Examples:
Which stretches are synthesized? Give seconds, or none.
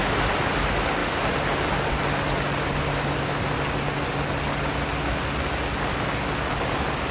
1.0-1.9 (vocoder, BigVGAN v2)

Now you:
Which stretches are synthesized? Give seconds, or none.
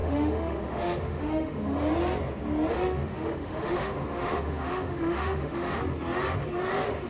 0.0-1.9 (autoencoder, DAC-VAE); 2.7-5.8; 6.6-7.1